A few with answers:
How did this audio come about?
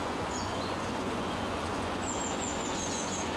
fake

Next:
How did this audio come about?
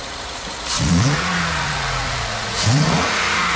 fake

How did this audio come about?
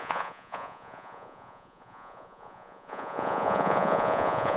fake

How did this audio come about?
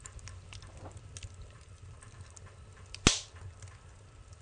real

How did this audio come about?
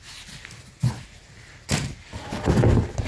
real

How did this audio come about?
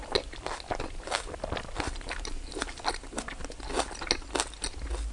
real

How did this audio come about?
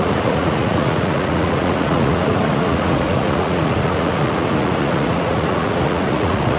fake